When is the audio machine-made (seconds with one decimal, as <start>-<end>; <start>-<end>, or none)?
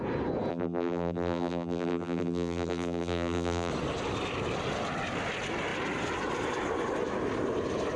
0.5-3.7